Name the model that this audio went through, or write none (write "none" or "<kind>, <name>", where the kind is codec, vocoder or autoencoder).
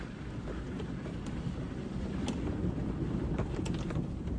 vocoder, BigVGAN v2